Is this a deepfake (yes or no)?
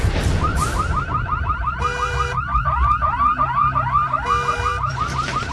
yes